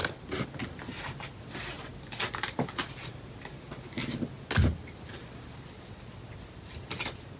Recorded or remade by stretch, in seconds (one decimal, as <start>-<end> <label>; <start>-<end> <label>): 0.0-7.4 recorded